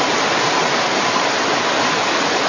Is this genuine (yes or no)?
yes